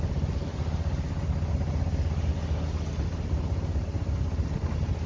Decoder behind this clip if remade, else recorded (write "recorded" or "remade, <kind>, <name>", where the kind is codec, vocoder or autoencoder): recorded